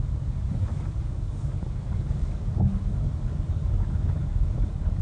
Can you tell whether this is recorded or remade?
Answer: remade